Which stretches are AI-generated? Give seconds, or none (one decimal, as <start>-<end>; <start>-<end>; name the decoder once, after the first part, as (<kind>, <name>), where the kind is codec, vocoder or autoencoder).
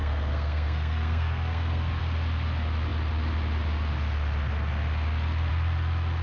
0.0-2.0 (codec, SNAC)